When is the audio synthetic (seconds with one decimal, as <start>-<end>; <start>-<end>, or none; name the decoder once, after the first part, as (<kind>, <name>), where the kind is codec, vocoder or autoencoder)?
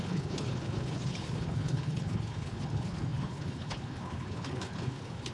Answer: 0.0-5.3 (codec, HILCodec)